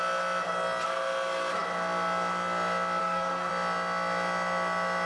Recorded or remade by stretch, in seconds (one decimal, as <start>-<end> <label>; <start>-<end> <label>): 0.0-3.0 recorded; 3.0-3.5 remade; 3.5-5.1 recorded